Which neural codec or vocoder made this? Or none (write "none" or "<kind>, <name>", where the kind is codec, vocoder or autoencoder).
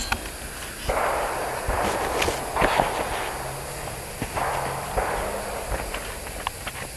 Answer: none